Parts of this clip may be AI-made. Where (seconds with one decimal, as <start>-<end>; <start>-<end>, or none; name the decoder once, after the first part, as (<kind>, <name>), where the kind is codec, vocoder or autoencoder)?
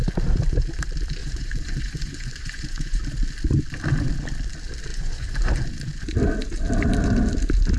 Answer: 1.2-3.0 (vocoder, Vocos); 4.9-5.6